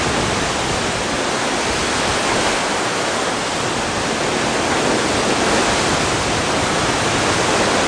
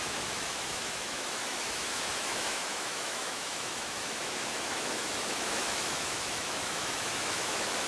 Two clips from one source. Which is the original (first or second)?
first